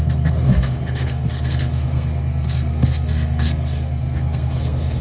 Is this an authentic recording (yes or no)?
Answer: no